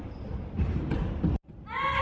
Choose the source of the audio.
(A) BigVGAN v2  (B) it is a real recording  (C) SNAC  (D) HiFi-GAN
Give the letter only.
B